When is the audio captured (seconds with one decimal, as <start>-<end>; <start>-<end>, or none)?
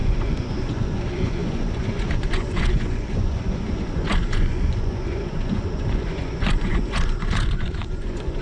none